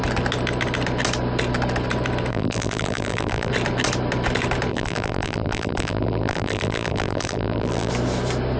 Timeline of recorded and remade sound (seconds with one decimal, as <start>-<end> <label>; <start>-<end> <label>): 0.0-2.3 recorded; 2.3-3.5 remade; 3.5-4.7 recorded; 4.7-7.9 remade; 7.9-8.6 recorded